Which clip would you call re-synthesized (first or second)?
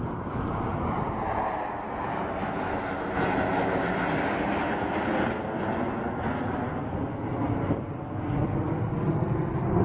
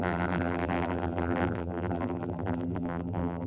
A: second